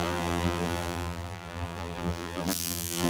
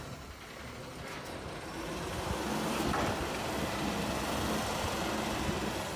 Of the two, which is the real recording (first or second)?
second